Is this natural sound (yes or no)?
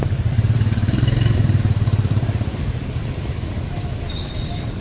no